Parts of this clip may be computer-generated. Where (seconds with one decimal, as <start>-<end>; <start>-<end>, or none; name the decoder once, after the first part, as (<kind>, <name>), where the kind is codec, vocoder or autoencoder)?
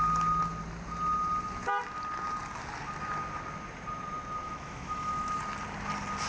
4.4-5.4 (autoencoder, DAC-VAE)